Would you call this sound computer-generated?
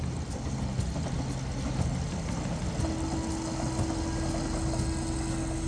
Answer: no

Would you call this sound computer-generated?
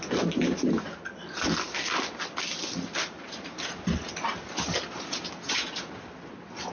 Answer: no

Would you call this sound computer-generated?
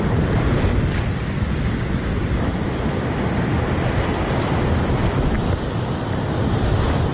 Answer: no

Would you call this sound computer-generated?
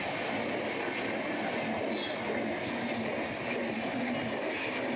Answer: no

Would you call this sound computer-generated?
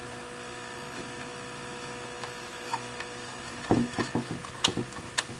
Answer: yes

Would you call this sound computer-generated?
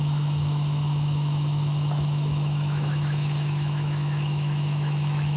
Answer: yes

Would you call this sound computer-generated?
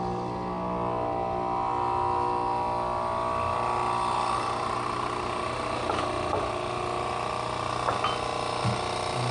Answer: no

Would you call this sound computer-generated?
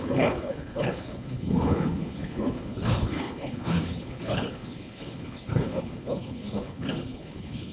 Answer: yes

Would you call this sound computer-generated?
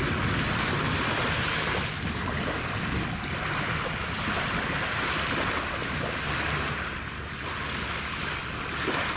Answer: no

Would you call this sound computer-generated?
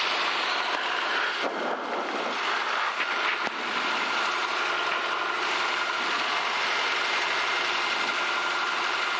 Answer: no